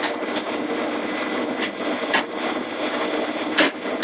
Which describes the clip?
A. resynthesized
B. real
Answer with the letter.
B